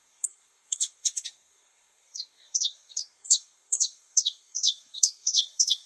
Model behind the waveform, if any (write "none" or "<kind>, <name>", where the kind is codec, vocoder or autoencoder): codec, SNAC